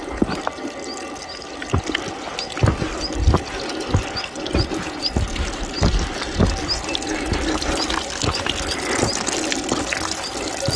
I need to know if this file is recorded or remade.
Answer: recorded